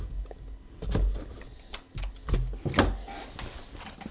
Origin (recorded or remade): recorded